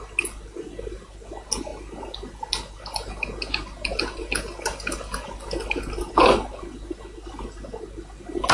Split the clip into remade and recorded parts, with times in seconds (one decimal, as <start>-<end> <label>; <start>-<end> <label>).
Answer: 0.0-8.5 recorded